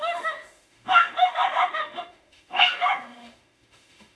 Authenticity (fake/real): fake